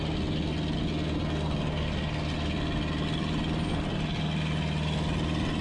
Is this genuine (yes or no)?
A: yes